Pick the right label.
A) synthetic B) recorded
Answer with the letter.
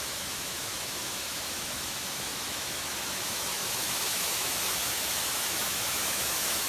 A